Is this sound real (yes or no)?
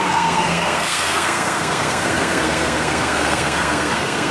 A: no